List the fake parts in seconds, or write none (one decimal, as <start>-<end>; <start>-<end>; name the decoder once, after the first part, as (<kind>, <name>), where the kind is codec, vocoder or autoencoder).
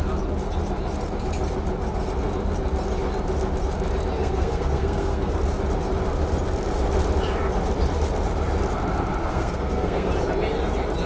4.2-5.4 (codec, SNAC); 9.2-10.1